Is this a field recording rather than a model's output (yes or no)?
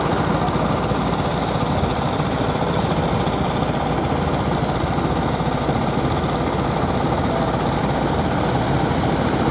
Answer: yes